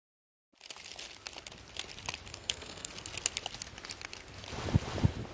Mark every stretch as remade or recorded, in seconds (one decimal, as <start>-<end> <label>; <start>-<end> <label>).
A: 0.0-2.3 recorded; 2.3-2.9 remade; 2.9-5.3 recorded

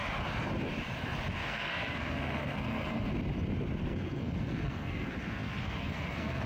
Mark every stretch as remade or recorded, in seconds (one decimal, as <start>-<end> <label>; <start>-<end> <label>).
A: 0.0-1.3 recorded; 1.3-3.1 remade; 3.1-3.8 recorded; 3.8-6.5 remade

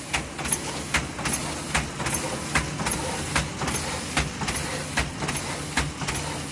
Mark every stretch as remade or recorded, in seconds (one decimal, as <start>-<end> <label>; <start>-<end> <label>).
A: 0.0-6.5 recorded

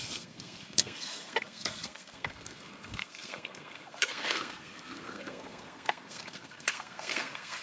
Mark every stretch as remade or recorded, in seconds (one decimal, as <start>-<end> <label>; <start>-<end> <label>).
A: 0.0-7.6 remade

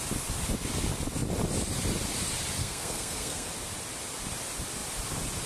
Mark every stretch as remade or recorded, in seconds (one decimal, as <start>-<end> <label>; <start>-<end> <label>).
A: 0.0-2.6 recorded; 2.6-3.5 remade; 3.5-5.5 recorded